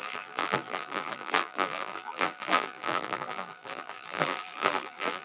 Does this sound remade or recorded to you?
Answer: remade